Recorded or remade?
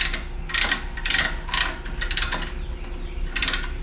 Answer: recorded